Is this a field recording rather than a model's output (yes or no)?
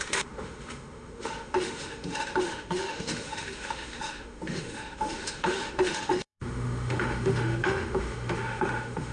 no